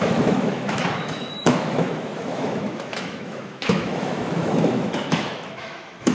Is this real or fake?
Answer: fake